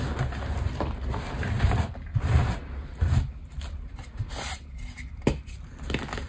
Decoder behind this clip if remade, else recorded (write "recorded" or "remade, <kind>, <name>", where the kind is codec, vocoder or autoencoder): recorded